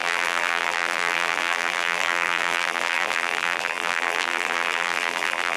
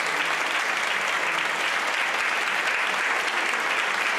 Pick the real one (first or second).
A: second